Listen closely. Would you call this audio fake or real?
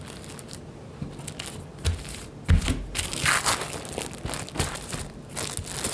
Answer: real